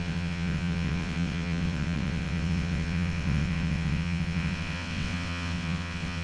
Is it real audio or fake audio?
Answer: fake